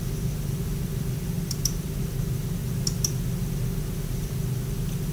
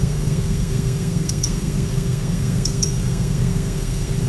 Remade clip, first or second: second